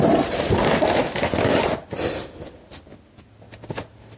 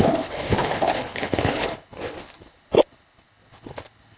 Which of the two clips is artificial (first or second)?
second